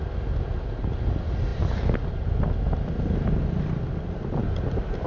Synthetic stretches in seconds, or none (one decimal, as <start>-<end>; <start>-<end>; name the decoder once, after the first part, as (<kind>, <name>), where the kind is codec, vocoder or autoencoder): none